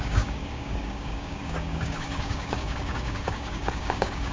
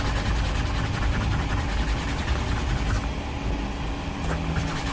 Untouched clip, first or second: second